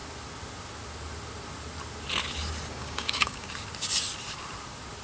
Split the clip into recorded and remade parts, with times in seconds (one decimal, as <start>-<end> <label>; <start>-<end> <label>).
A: 0.0-2.7 recorded; 2.7-3.5 remade; 3.5-5.0 recorded

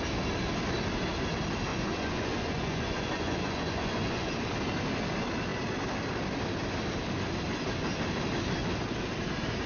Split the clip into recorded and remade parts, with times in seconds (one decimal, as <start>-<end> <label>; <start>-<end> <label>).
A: 0.0-1.7 recorded; 1.7-4.3 remade; 4.3-9.7 recorded

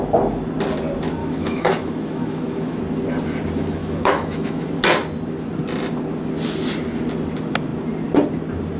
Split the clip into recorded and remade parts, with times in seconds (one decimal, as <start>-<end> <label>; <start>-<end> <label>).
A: 0.0-1.2 recorded; 1.2-2.8 remade; 2.8-3.8 recorded; 3.8-4.7 remade; 4.7-8.8 recorded

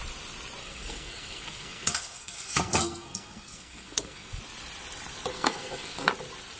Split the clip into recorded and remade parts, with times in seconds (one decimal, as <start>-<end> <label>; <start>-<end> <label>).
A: 0.0-0.6 recorded; 0.6-4.4 remade; 4.4-5.3 recorded; 5.3-6.1 remade; 6.1-6.6 recorded

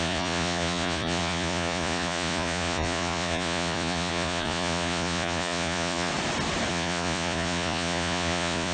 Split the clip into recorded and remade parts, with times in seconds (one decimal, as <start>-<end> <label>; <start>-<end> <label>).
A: 0.0-6.1 remade; 6.1-6.7 recorded; 6.7-8.7 remade

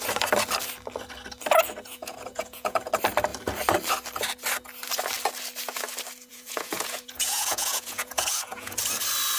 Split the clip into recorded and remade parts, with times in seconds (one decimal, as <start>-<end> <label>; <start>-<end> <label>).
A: 0.0-1.9 recorded; 1.9-2.9 remade; 2.9-6.3 recorded; 6.3-8.8 remade; 8.8-9.4 recorded